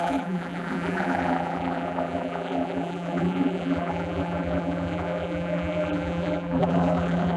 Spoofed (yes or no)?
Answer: yes